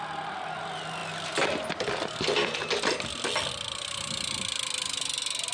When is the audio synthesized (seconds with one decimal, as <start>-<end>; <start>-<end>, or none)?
none